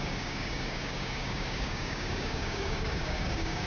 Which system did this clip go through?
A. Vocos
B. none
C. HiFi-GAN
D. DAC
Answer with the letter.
D